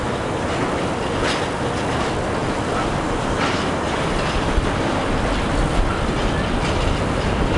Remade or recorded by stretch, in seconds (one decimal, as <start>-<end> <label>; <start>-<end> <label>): 0.0-7.6 recorded